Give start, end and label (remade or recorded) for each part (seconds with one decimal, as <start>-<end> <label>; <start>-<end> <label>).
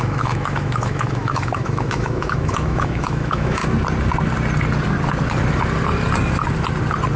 0.0-3.6 remade; 3.6-7.2 recorded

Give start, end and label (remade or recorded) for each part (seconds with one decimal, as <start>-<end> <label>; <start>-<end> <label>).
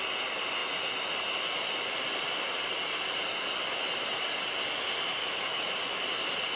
0.0-5.2 recorded; 5.2-5.7 remade; 5.7-6.6 recorded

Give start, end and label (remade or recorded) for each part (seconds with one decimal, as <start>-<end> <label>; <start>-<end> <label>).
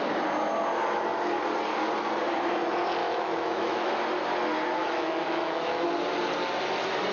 0.0-3.0 recorded; 3.0-3.9 remade; 3.9-4.8 recorded; 4.8-5.9 remade; 5.9-7.1 recorded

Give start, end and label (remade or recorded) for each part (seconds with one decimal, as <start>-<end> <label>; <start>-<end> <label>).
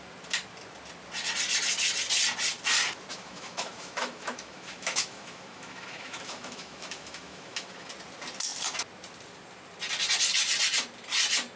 0.0-3.1 recorded; 3.1-7.9 remade; 7.9-11.6 recorded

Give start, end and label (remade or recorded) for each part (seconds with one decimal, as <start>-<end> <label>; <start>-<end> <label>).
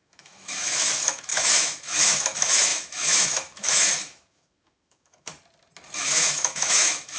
0.0-5.3 remade; 5.3-6.0 recorded; 6.0-7.2 remade